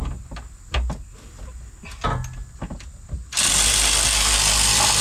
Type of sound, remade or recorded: recorded